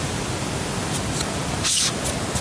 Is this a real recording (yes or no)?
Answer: yes